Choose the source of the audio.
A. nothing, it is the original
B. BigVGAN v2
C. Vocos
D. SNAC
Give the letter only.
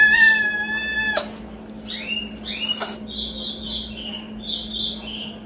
A